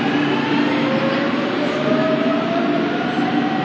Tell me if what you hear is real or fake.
real